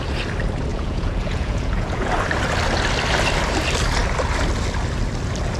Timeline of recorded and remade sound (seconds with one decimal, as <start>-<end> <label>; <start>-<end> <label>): 0.0-0.7 recorded; 0.7-2.1 remade; 2.1-5.6 recorded